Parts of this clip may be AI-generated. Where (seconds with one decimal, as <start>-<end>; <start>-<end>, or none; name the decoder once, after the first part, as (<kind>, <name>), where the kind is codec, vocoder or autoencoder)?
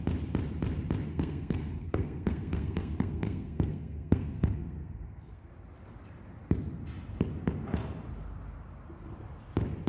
1.1-5.5 (codec, SNAC)